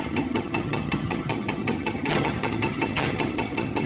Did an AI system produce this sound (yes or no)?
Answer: yes